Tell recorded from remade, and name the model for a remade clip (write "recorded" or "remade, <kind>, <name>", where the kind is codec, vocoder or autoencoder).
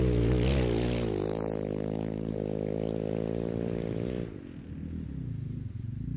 recorded